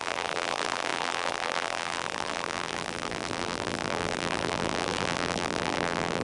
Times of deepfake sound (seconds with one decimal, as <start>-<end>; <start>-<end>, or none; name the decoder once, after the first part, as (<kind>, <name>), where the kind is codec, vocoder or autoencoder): 0.0-6.2 (vocoder, BigVGAN v2)